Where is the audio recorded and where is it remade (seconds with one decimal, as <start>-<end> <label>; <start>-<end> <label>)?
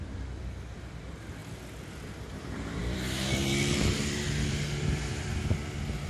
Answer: 0.0-1.4 remade; 1.4-1.9 recorded; 1.9-6.1 remade